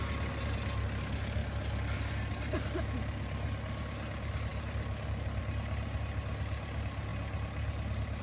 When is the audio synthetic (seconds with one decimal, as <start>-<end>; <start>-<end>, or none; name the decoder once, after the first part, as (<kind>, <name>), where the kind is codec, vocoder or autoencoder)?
none